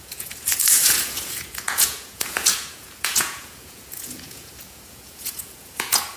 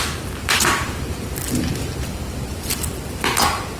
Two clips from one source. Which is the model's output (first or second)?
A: first